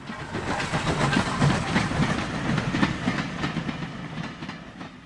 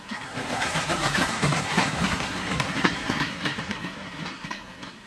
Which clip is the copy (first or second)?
second